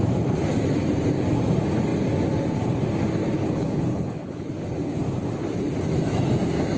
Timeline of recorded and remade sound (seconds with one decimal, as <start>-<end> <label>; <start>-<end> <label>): 0.0-3.4 recorded; 3.4-4.5 remade; 4.5-6.8 recorded